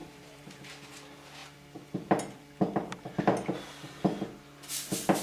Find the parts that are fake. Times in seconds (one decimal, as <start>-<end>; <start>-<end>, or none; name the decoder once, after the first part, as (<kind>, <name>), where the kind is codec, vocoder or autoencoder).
0.0-0.7 (vocoder, BigVGAN v2)